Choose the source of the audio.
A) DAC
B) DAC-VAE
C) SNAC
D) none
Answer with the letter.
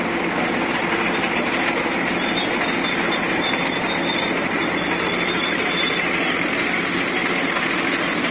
D